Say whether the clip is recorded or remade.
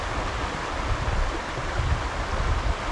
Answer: recorded